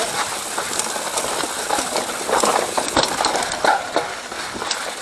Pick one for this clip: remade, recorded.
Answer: recorded